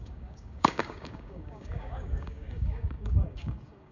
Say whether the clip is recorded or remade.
remade